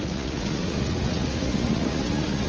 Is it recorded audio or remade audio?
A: remade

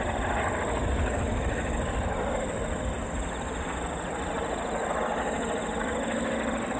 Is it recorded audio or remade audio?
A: recorded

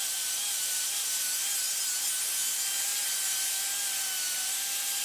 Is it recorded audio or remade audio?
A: recorded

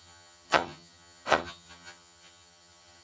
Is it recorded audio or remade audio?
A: remade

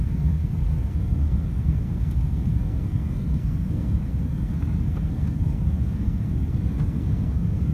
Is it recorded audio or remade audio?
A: remade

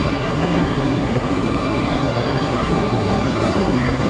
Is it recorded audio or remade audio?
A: remade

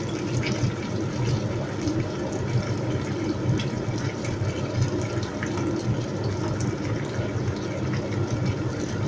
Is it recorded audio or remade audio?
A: recorded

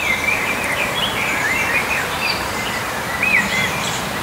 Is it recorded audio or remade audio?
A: remade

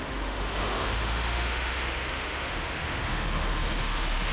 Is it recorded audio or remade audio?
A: remade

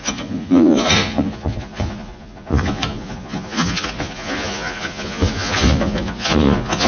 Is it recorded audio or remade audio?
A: remade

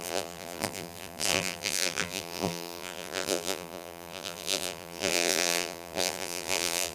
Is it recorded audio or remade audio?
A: remade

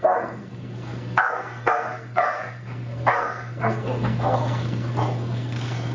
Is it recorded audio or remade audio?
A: remade